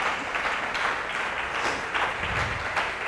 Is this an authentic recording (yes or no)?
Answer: yes